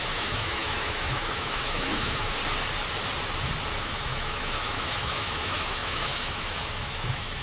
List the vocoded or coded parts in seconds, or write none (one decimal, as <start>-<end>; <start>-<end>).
0.0-2.4; 3.8-7.4